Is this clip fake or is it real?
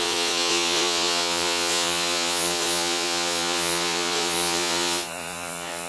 fake